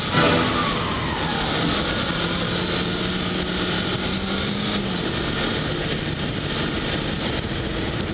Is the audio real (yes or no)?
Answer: yes